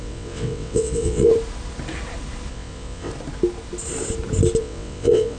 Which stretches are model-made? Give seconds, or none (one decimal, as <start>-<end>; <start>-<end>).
0.0-1.3; 2.5-3.1; 4.6-5.4